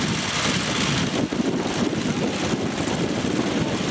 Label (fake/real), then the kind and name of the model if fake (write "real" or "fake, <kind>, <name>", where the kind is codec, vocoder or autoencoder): real